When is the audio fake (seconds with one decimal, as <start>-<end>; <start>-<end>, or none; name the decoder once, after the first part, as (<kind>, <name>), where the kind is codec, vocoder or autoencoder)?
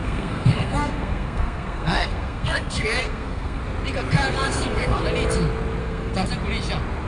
0.0-3.6 (codec, SNAC); 4.3-5.0; 5.8-6.3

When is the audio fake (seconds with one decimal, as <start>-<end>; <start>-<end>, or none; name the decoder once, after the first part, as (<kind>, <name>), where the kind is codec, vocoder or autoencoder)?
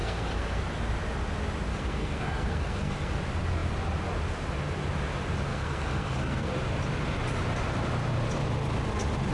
0.0-0.6 (codec, SNAC); 1.7-3.2; 5.5-6.5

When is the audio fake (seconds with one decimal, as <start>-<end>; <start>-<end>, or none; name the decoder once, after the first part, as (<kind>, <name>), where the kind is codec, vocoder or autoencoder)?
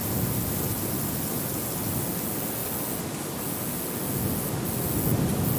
none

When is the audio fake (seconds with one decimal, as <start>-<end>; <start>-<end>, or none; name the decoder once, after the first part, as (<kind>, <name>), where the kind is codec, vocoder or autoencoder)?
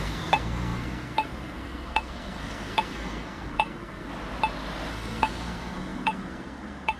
0.0-4.1 (codec, SNAC); 4.9-7.0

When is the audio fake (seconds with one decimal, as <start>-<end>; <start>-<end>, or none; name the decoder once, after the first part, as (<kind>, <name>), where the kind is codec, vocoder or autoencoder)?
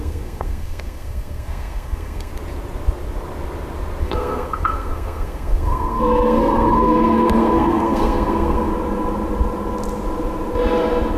0.0-2.3 (codec, SNAC); 4.0-8.7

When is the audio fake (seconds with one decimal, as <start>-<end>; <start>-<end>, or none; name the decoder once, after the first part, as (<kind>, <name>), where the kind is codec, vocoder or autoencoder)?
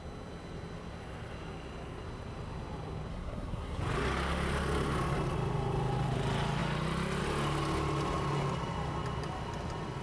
3.1-3.8 (codec, SNAC)